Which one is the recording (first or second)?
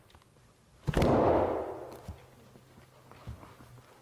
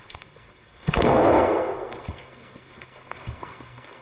first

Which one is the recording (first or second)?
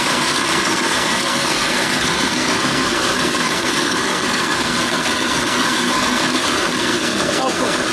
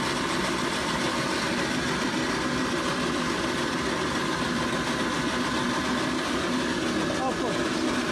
second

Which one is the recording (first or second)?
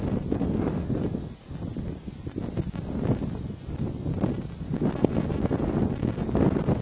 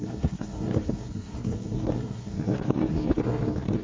first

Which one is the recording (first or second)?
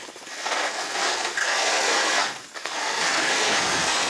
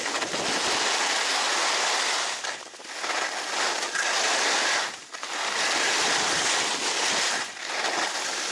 second